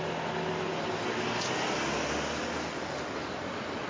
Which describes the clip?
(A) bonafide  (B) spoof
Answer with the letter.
A